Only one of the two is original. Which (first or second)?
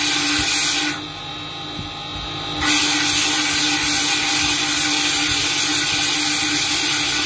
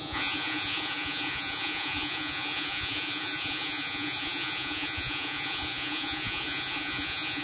first